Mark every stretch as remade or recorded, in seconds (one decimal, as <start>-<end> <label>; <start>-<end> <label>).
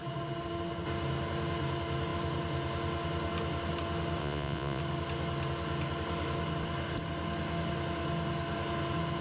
0.0-4.2 recorded; 4.2-4.8 remade; 4.8-9.2 recorded